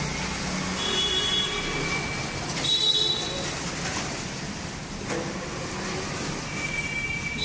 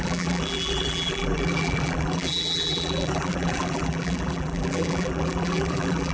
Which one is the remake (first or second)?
second